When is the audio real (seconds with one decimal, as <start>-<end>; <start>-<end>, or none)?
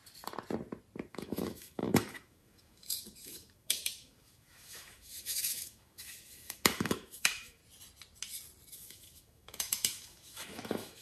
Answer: 0.0-1.1; 7.6-8.7